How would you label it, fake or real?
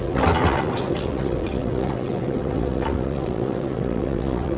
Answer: fake